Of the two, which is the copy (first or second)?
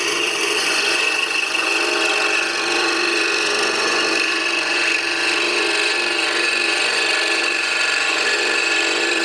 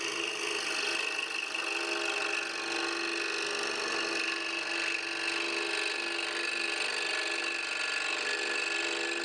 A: first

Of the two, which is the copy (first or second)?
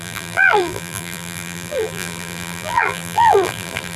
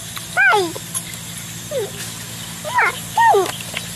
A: first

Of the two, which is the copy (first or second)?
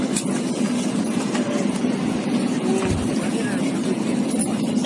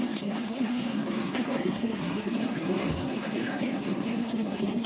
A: second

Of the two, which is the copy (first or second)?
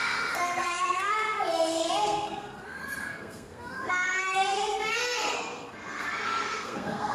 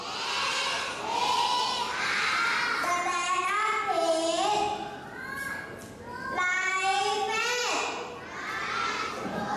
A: first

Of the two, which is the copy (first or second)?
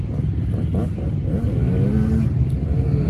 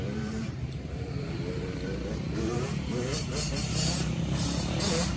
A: second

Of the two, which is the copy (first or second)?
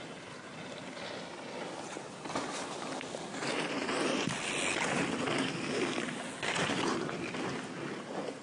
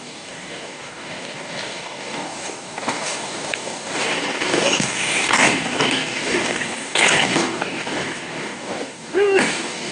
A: second